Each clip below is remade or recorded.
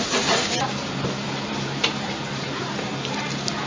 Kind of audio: remade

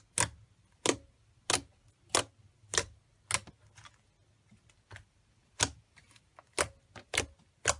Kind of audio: recorded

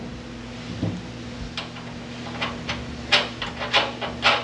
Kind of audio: recorded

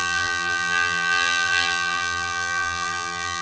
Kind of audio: remade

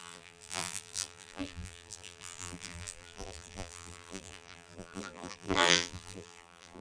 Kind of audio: remade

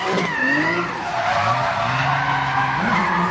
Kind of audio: recorded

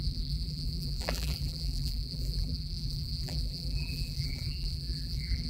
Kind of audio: remade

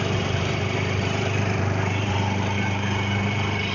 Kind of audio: remade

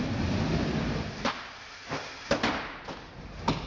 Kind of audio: recorded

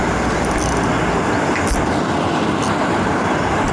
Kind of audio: recorded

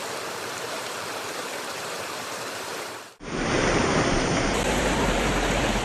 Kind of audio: remade